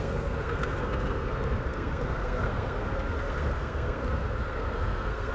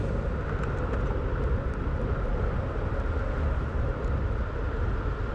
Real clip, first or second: second